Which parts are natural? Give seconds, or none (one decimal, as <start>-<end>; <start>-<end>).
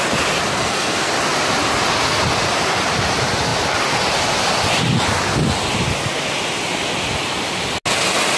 0.0-0.5; 1.1-8.4